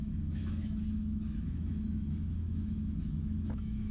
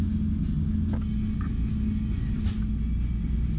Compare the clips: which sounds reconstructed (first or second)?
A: first